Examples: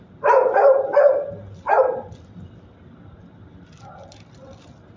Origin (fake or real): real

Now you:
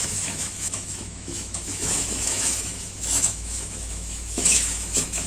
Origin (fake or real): fake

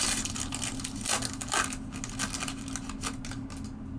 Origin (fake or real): real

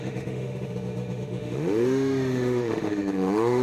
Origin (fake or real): fake